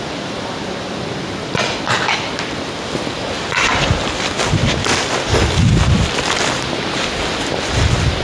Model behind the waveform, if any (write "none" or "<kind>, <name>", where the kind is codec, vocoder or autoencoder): none